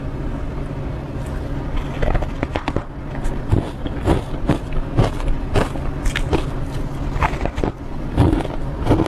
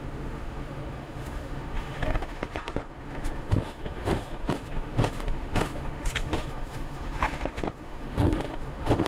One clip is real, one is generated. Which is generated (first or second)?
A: second